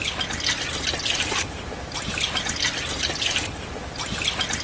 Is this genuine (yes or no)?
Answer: yes